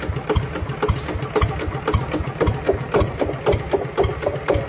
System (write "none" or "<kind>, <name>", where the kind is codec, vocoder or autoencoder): none